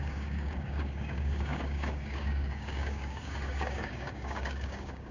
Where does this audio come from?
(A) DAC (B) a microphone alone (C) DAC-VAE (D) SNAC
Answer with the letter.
A